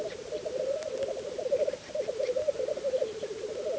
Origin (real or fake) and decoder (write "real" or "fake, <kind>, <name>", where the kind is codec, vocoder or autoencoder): real